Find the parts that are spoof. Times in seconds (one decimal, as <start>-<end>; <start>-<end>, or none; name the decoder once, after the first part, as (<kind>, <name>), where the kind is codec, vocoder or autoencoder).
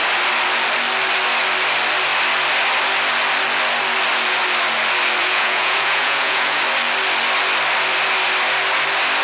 5.2-6.6 (vocoder, Vocos)